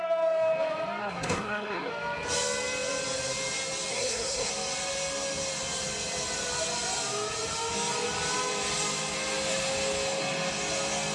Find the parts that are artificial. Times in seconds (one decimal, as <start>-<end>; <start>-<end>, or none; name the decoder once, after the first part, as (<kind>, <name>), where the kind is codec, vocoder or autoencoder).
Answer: 1.0-1.9 (codec, SNAC); 3.9-4.5